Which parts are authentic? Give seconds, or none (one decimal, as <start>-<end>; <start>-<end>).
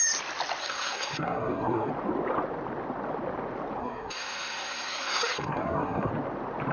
0.0-0.6; 1.9-3.8; 6.1-6.7